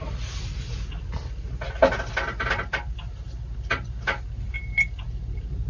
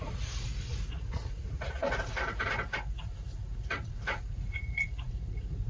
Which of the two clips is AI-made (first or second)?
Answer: second